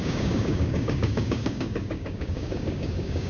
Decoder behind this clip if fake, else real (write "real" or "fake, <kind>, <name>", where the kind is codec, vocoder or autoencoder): fake, codec, DAC